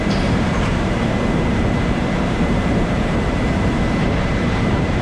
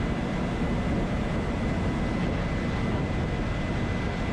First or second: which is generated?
first